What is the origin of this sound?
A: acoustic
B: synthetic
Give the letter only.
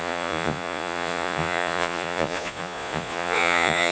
B